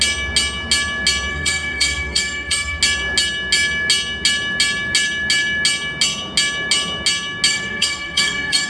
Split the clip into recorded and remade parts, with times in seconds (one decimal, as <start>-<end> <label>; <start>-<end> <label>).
0.0-1.3 recorded; 1.3-2.8 remade; 2.8-7.5 recorded; 7.5-8.7 remade

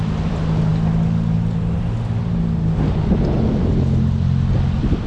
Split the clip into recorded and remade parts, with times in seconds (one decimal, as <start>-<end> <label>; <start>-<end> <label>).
0.0-5.1 recorded

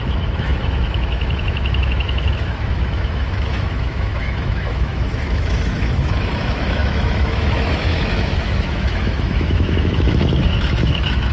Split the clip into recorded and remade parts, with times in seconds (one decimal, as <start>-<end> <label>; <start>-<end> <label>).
0.0-11.3 remade

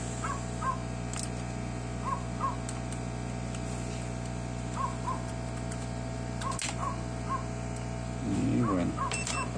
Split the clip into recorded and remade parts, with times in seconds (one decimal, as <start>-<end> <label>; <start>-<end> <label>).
0.0-9.6 recorded

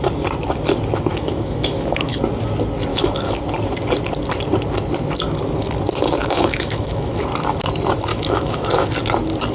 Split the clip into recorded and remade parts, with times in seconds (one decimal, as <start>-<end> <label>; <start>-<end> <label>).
0.0-1.1 recorded; 1.1-2.2 remade; 2.2-2.9 recorded; 2.9-3.4 remade; 3.4-6.2 recorded; 6.2-7.2 remade; 7.2-8.1 recorded; 8.1-8.9 remade; 8.9-9.5 recorded

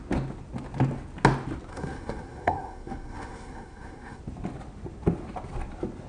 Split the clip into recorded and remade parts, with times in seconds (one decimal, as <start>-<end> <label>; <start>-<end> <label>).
0.0-1.7 recorded; 1.7-4.2 remade; 4.2-6.1 recorded

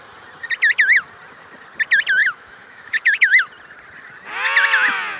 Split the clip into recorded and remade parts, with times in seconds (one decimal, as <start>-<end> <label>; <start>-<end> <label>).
0.0-2.2 recorded; 2.2-3.5 remade; 3.5-5.2 recorded

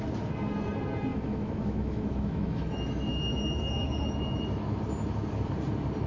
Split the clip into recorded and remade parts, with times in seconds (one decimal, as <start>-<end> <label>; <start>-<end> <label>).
0.0-1.1 recorded; 1.1-4.8 remade; 4.8-6.1 recorded